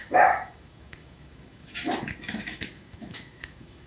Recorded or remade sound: remade